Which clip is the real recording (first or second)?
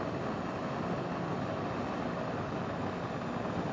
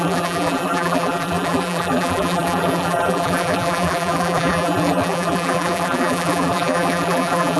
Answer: first